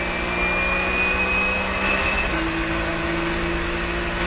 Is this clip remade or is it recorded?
recorded